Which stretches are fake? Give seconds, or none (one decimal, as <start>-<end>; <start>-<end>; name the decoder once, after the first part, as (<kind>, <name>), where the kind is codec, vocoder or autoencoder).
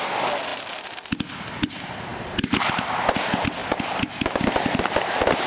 0.5-1.1 (vocoder, BigVGAN v2); 2.1-3.2